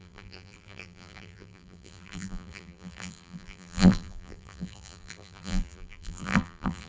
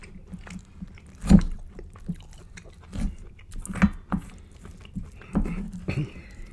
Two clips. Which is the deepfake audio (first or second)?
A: first